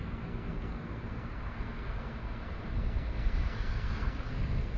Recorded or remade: remade